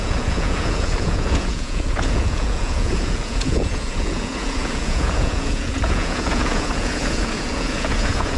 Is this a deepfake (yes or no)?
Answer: yes